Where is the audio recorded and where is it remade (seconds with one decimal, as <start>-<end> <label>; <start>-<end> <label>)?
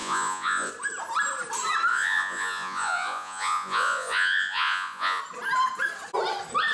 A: 0.0-0.7 remade; 0.7-1.9 recorded; 1.9-5.2 remade; 5.2-6.7 recorded